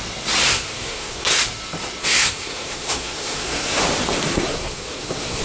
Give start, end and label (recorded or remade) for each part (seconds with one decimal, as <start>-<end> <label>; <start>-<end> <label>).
0.0-0.4 recorded; 0.4-1.4 remade; 1.4-2.0 recorded; 2.0-3.8 remade; 3.8-4.3 recorded; 4.3-5.4 remade